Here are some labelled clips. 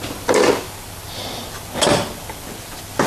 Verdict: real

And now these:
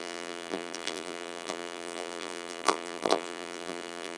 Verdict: fake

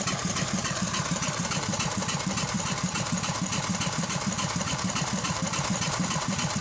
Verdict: fake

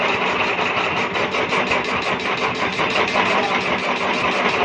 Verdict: real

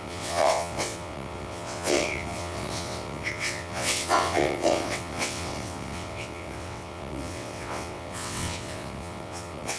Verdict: fake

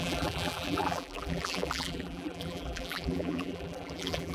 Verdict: fake